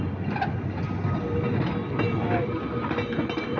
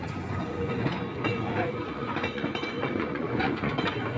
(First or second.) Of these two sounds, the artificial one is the second